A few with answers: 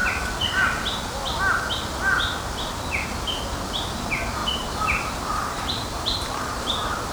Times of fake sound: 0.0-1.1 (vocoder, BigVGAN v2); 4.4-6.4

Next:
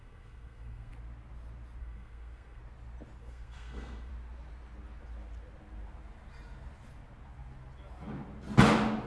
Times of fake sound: 0.0-0.9 (codec, SNAC); 1.8-2.6; 3.2-4.1

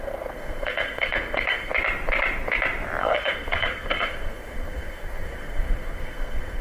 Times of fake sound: 0.0-1.7 (codec, SNAC); 3.0-6.6

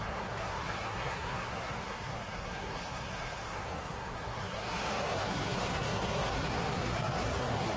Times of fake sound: 0.0-7.8 (codec, SNAC)

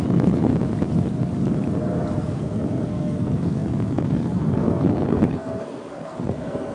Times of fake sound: 0.0-0.5 (codec, SNAC); 2.2-6.7

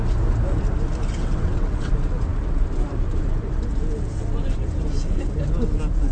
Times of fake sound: 1.2-1.9 (vocoder, WaveNeXt)

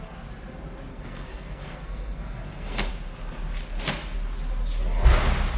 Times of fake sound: 0.9-2.9 (codec, SNAC)

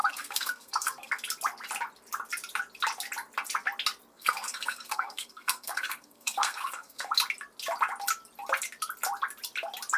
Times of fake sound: 0.0-1.1 (codec, SNAC); 4.1-7.1